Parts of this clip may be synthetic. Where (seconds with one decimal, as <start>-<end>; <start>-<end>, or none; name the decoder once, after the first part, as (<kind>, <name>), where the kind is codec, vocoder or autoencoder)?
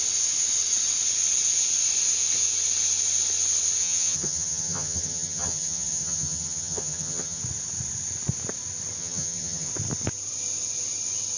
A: 3.8-7.4 (vocoder, HiFi-GAN); 9.0-9.7